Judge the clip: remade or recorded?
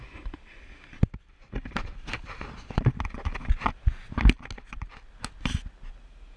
recorded